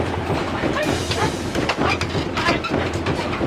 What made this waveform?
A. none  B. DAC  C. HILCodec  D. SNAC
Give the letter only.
A